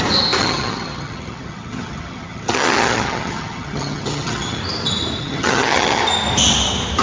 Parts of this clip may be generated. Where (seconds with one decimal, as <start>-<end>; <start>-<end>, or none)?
0.4-4.6; 5.2-6.0